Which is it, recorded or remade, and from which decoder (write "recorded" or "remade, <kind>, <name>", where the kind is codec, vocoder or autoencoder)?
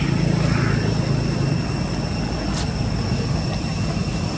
recorded